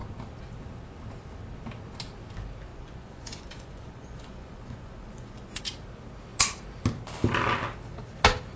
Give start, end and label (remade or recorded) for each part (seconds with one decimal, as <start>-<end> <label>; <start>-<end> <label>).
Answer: 0.0-2.7 recorded; 2.7-5.6 remade; 5.6-8.6 recorded